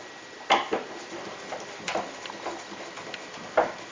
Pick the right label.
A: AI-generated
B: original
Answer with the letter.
B